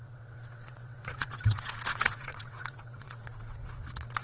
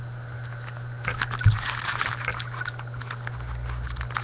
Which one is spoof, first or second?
first